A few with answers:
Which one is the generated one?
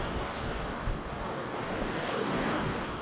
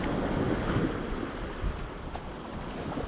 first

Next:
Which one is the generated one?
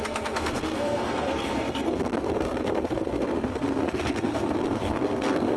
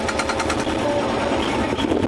first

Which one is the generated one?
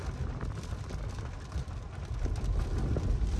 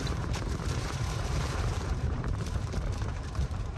second